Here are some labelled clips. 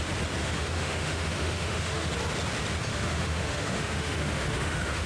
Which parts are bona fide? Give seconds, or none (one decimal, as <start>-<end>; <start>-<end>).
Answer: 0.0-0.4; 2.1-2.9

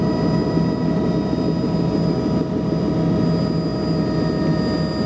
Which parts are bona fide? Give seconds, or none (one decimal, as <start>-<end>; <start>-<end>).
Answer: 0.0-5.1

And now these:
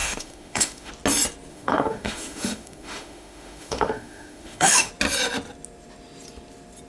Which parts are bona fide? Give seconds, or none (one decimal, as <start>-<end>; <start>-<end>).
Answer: 0.9-1.5; 4.9-6.9

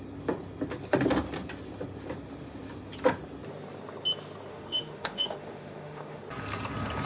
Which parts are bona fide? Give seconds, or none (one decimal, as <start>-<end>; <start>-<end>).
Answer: 0.0-4.5; 6.2-7.1

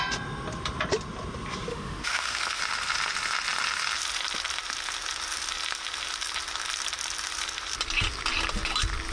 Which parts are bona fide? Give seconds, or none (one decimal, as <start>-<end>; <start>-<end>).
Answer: 0.0-1.7; 2.6-9.1

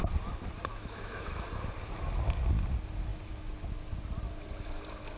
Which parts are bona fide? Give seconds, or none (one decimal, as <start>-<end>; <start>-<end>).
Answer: 0.0-0.7; 1.5-5.2

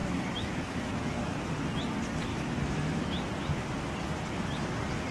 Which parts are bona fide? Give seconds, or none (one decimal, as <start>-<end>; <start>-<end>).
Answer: 1.5-2.3; 3.1-5.1